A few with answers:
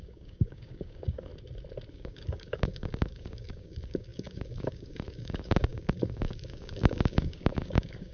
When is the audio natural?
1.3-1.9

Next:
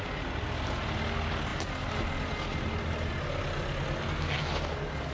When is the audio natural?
0.0-5.1